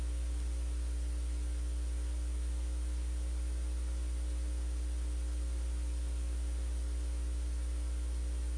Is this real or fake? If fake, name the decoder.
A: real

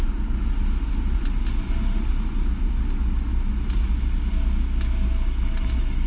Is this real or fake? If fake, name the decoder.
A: real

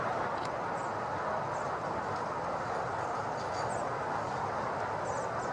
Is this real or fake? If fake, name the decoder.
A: real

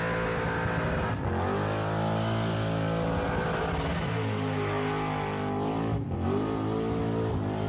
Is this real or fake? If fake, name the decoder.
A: real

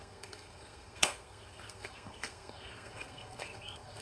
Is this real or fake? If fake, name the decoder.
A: fake, codec, SNAC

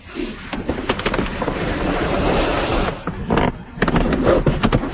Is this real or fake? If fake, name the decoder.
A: real